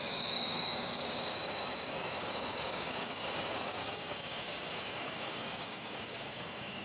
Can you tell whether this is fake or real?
fake